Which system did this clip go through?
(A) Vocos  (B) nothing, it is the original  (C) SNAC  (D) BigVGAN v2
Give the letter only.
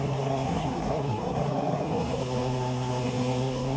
C